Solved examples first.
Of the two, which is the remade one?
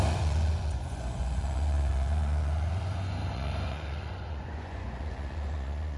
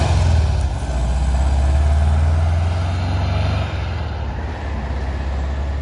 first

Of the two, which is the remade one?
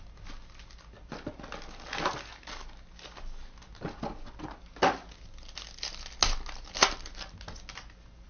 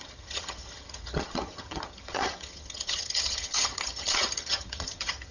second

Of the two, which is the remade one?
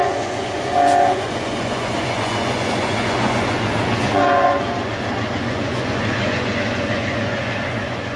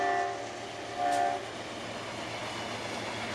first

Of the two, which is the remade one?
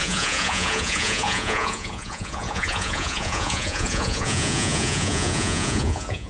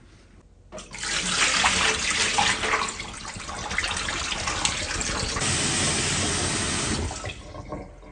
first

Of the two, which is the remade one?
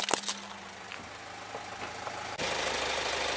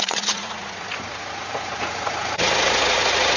second